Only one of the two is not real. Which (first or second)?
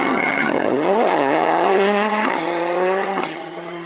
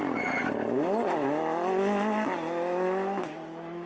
first